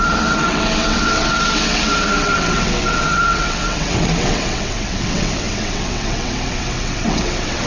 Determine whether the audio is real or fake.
fake